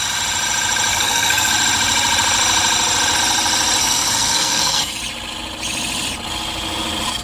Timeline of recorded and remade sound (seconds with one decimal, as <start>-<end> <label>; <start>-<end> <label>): 0.0-0.9 recorded; 0.9-1.5 remade; 1.5-3.8 recorded; 3.8-5.0 remade; 5.0-7.2 recorded